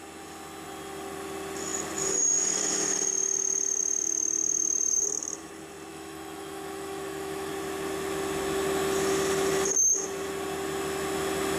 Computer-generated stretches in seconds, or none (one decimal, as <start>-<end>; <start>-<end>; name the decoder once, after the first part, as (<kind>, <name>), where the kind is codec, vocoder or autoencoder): 5.9-7.5 (autoencoder, DAC-VAE)